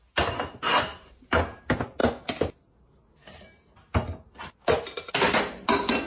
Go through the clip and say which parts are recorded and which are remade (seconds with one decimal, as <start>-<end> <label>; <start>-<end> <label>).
0.0-0.9 recorded; 0.9-1.4 remade; 1.4-6.1 recorded